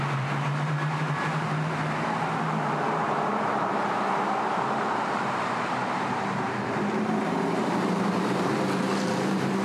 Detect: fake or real fake